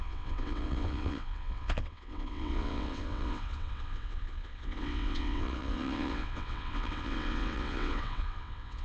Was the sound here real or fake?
fake